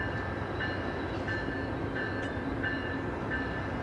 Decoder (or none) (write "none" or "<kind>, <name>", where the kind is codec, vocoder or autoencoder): none